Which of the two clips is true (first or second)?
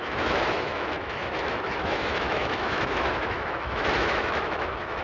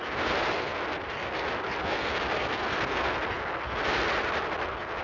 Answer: second